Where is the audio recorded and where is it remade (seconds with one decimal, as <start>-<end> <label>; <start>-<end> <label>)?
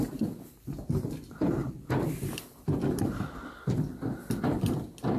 0.0-1.6 recorded; 1.6-4.7 remade; 4.7-5.2 recorded